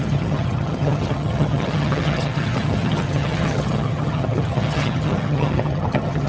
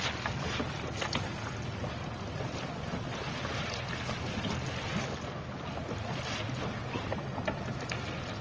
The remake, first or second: first